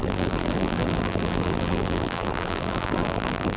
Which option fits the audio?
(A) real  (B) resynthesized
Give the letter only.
B